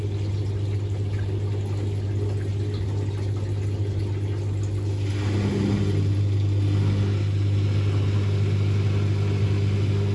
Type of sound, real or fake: real